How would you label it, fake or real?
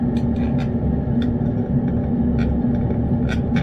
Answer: real